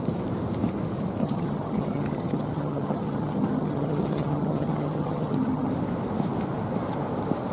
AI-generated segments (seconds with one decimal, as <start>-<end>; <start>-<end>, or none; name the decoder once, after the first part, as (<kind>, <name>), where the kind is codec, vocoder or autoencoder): 1.2-5.7 (vocoder, HiFi-GAN)